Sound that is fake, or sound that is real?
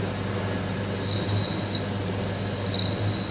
real